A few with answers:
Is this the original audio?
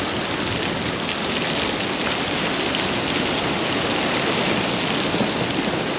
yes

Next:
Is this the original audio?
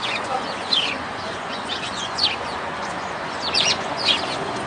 no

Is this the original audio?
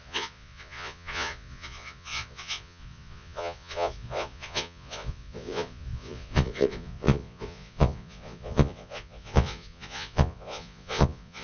no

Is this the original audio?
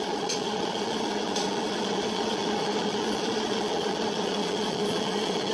no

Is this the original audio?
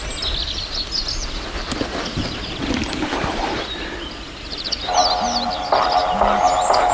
yes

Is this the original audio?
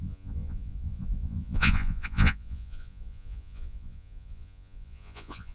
no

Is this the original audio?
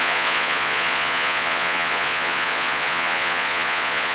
no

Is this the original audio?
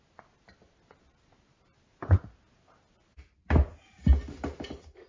yes